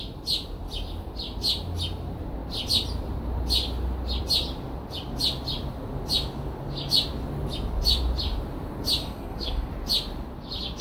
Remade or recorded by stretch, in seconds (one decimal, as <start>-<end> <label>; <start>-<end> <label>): 0.0-9.0 recorded; 9.0-9.7 remade; 9.7-10.8 recorded